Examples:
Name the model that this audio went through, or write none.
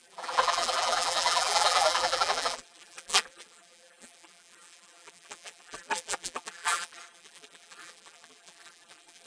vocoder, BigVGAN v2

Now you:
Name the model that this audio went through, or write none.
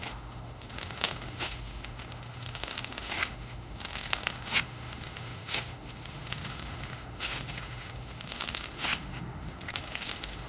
autoencoder, DAC-VAE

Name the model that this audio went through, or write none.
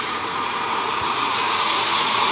vocoder, Vocos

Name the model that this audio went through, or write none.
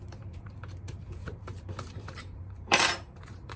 vocoder, BigVGAN v2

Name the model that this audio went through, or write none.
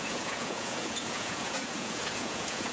vocoder, Vocos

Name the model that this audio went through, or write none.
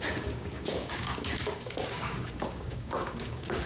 codec, DAC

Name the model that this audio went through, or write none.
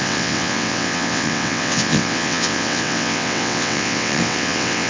vocoder, WaveNeXt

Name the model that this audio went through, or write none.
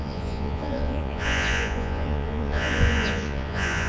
vocoder, Vocos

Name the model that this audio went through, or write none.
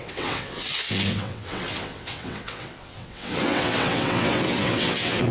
vocoder, WaveNeXt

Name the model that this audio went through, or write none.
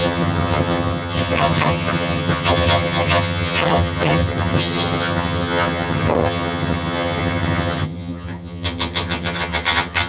vocoder, HiFi-GAN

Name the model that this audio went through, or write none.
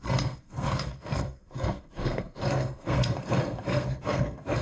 codec, SNAC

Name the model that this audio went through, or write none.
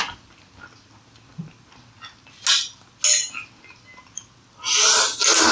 none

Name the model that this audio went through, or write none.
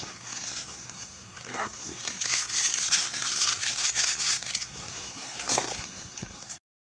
codec, SNAC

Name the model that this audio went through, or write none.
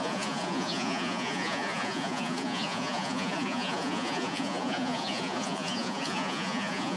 vocoder, Vocos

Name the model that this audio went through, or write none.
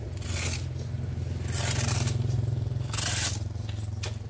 none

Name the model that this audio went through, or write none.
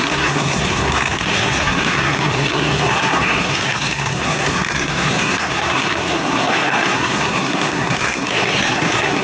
codec, SNAC